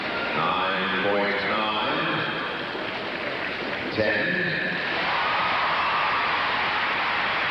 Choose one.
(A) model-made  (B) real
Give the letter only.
A